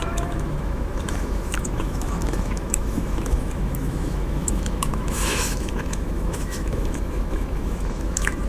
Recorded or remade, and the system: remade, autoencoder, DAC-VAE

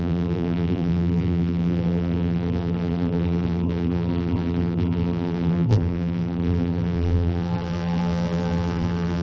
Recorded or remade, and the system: remade, vocoder, BigVGAN v2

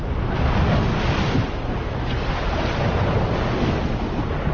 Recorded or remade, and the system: recorded